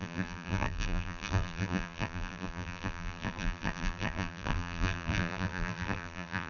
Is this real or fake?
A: fake